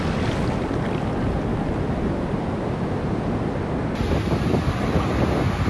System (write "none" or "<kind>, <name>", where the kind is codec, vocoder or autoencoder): none